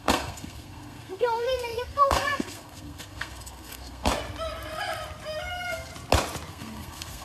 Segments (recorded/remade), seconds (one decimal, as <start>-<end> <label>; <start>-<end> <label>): 0.0-4.1 remade; 4.1-5.5 recorded; 5.5-5.9 remade; 5.9-6.5 recorded; 6.5-7.2 remade